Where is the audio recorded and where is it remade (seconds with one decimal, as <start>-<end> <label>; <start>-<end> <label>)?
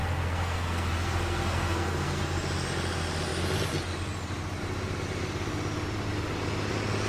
0.0-2.2 remade; 2.2-7.1 recorded